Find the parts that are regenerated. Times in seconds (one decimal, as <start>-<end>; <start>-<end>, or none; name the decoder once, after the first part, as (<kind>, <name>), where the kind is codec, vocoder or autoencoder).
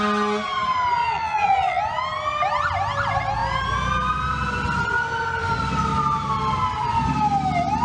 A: 1.0-1.8 (vocoder, Vocos)